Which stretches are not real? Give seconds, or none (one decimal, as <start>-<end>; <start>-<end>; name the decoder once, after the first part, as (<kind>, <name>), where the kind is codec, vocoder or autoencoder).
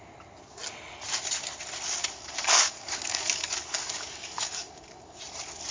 2.0-5.2 (codec, DAC)